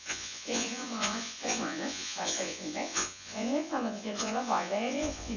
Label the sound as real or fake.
fake